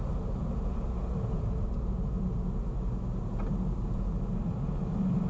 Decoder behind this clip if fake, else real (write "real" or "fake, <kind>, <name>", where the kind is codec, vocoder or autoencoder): real